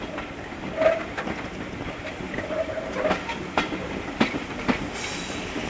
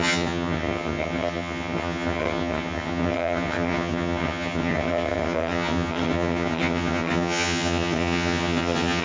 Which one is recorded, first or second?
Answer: first